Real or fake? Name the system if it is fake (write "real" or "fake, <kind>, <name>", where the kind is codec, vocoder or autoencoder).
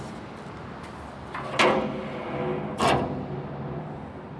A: real